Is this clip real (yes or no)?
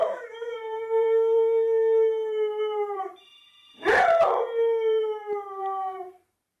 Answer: no